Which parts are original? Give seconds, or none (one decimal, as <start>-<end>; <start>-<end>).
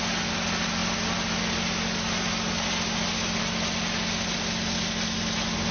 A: 0.0-5.7